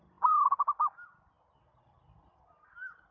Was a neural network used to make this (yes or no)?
no